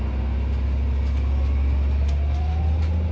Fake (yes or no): no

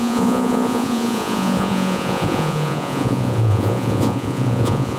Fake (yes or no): yes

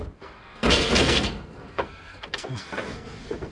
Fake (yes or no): yes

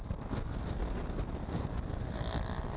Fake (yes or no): no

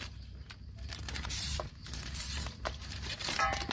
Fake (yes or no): yes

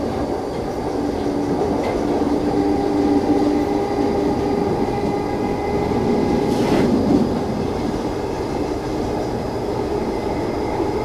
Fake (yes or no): no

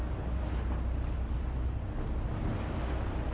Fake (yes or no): no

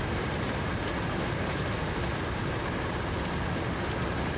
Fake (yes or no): no